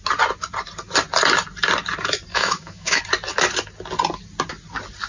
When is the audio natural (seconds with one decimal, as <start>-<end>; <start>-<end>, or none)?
0.0-2.3; 3.0-5.1